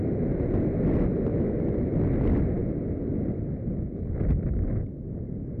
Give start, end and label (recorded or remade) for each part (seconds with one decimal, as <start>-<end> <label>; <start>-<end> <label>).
0.0-1.3 recorded; 1.3-1.9 remade; 1.9-5.6 recorded